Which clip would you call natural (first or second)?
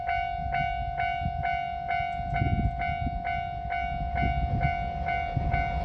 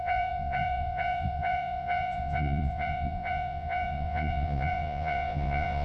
first